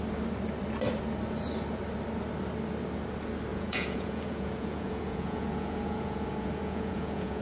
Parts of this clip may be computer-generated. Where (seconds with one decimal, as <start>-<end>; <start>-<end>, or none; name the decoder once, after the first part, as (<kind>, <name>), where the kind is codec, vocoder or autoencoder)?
3.5-7.4 (vocoder, Vocos)